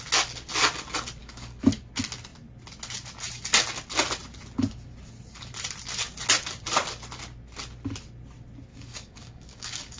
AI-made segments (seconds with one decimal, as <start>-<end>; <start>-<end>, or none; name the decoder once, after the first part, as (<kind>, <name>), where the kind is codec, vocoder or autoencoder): 1.2-1.8 (codec, DAC); 8.7-10.0